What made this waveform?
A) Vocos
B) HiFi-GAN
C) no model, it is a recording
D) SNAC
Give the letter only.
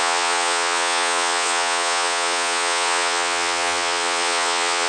A